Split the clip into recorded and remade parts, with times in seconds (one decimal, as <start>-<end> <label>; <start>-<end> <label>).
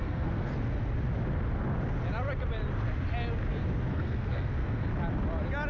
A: 0.0-0.5 remade; 0.5-3.9 recorded; 3.9-4.8 remade; 4.8-5.7 recorded